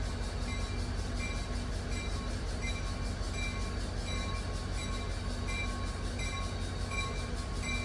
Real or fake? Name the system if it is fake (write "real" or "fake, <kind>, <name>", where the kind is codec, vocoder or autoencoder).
real